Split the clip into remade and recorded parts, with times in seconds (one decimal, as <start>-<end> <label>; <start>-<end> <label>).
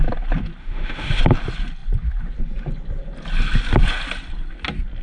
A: 0.0-0.6 recorded; 0.6-1.2 remade; 1.2-5.0 recorded